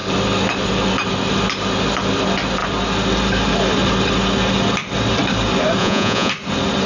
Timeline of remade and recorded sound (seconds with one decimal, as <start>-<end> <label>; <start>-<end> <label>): 0.0-5.8 recorded; 5.8-6.3 remade; 6.3-6.9 recorded